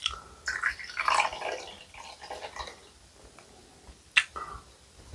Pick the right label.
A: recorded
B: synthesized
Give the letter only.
A